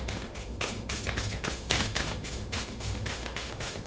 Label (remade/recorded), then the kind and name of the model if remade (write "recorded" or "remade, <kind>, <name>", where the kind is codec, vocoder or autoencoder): remade, autoencoder, DAC-VAE